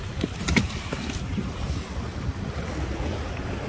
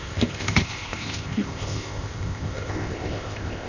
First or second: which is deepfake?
second